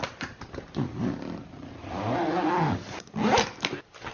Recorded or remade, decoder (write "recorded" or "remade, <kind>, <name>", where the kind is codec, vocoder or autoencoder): recorded